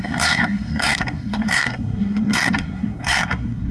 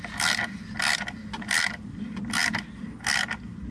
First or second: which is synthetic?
first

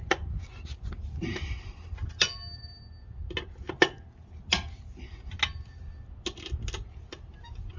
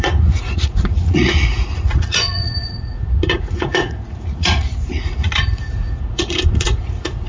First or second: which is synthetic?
second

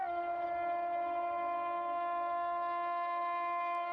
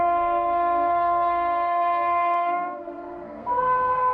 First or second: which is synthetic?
second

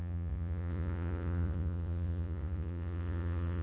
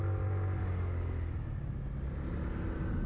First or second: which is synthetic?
first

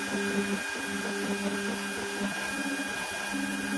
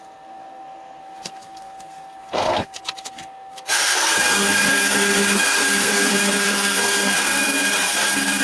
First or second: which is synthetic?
second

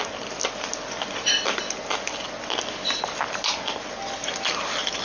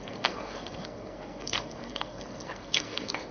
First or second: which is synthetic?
second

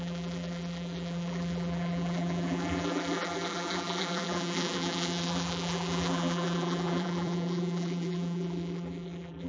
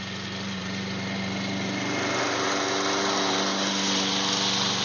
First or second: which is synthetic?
first